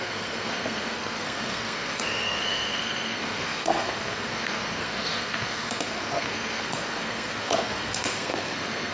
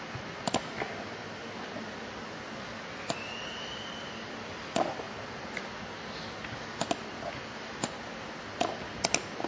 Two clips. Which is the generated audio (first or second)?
first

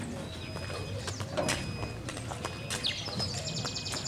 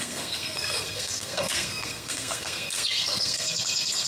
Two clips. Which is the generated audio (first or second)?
second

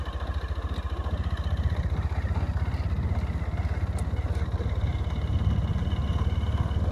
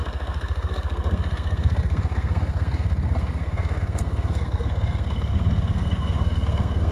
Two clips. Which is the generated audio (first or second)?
second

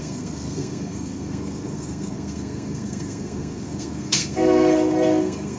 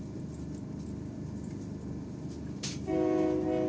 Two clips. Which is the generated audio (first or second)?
first